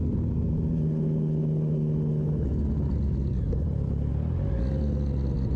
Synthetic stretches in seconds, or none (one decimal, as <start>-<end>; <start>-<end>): none